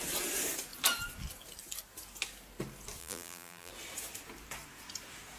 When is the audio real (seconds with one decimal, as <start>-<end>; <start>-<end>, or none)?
0.0-3.0; 3.7-5.4